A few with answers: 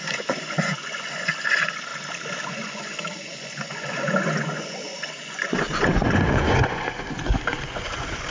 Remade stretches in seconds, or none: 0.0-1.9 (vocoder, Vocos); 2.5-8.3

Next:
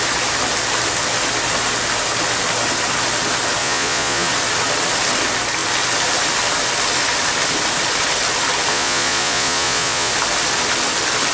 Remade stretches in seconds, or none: 3.6-4.3 (vocoder, Vocos); 8.7-10.1

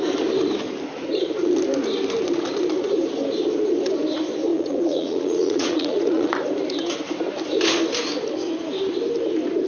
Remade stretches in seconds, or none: 4.5-6.3 (vocoder, Vocos)